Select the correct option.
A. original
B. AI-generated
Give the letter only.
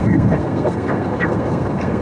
B